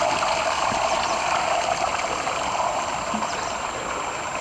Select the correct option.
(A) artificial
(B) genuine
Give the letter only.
B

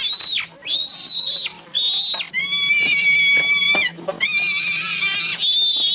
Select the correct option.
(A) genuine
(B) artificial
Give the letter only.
A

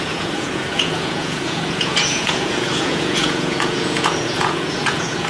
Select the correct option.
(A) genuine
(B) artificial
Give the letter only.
B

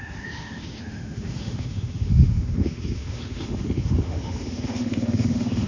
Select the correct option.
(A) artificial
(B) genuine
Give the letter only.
A